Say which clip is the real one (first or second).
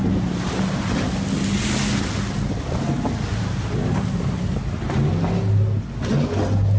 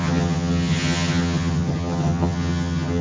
first